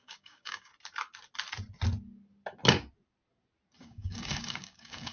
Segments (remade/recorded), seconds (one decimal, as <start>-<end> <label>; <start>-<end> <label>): 0.0-0.7 remade; 0.7-3.8 recorded; 3.8-5.1 remade